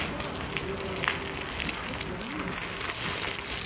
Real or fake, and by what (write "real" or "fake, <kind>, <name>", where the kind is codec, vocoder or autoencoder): real